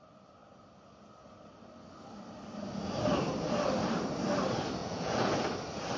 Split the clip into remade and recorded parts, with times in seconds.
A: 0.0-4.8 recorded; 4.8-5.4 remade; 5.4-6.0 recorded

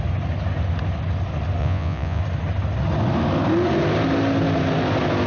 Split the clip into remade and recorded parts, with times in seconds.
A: 0.0-1.6 recorded; 1.6-2.2 remade; 2.2-5.3 recorded

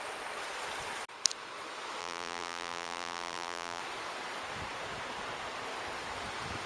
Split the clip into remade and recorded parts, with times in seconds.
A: 0.0-2.0 recorded; 2.0-3.8 remade; 3.8-6.7 recorded

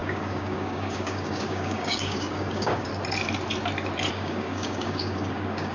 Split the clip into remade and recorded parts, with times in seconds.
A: 0.0-2.9 remade; 2.9-4.1 recorded; 4.1-5.7 remade

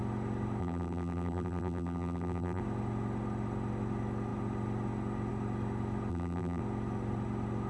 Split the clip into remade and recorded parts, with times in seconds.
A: 0.0-0.6 recorded; 0.6-2.6 remade; 2.6-6.1 recorded; 6.1-6.6 remade; 6.6-7.7 recorded